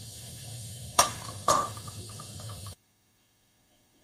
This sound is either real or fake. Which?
fake